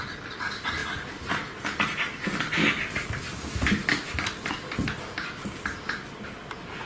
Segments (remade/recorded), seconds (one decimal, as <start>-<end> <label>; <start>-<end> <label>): 0.0-6.9 recorded